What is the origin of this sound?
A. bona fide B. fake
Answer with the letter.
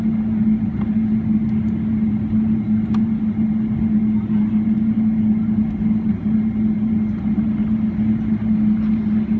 A